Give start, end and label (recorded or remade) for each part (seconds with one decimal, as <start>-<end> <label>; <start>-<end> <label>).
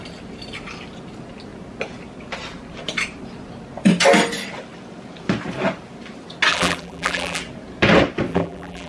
0.0-6.5 recorded; 6.5-7.4 remade; 7.4-8.3 recorded; 8.3-8.9 remade